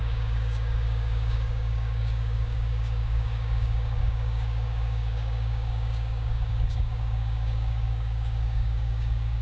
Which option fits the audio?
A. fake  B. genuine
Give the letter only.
A